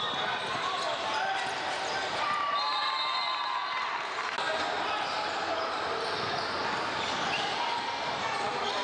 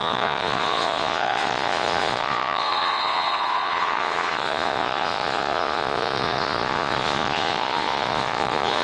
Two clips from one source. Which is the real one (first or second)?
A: first